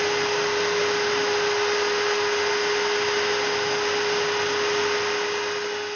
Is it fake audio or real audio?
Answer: real